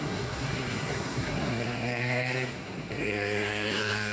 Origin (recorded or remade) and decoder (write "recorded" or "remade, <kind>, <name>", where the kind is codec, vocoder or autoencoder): remade, codec, SNAC